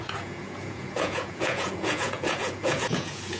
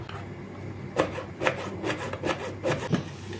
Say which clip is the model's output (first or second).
first